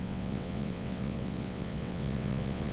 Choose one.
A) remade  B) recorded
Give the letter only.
A